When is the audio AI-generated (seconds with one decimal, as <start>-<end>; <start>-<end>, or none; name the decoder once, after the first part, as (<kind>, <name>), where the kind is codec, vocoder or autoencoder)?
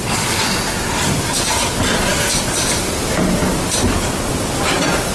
none